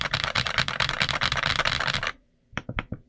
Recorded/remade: remade